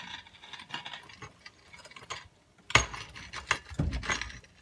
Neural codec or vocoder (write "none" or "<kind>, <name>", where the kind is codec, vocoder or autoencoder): none